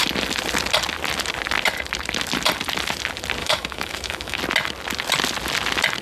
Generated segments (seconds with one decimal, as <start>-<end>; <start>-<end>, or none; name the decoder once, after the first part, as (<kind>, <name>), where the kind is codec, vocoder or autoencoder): 3.4-4.4 (autoencoder, DAC-VAE)